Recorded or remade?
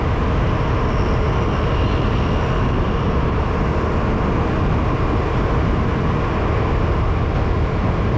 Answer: recorded